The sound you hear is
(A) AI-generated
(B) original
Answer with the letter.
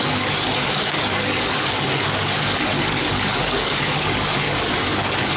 A